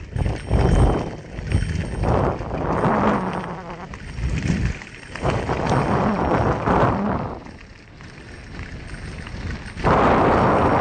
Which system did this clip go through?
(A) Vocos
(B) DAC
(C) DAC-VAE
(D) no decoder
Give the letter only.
D